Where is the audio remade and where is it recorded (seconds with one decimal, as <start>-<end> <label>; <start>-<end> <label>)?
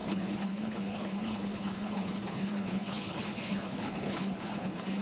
0.0-5.0 remade